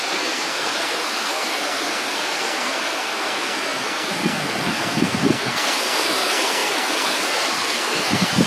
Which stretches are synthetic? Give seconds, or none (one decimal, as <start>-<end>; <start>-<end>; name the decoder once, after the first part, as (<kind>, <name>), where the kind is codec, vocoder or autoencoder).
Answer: 0.0-8.5 (codec, SNAC)